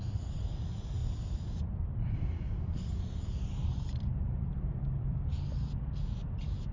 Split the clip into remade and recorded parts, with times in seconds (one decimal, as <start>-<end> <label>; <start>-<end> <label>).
0.0-1.0 recorded; 1.0-3.2 remade; 3.2-4.1 recorded; 4.1-5.2 remade; 5.2-6.7 recorded